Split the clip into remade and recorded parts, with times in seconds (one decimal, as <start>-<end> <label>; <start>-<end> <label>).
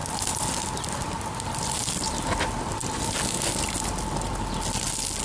0.0-5.2 recorded